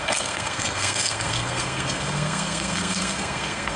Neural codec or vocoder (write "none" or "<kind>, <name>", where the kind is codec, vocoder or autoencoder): codec, SNAC